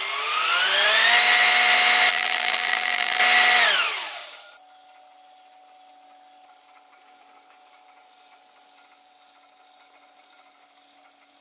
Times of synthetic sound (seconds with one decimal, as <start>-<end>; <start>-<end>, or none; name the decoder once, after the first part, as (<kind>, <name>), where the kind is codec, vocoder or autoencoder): 2.1-3.2 (vocoder, BigVGAN v2)